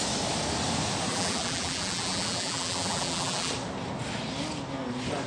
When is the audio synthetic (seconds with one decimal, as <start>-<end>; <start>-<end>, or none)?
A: 1.1-3.5